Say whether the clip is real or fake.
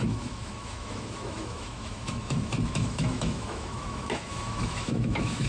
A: fake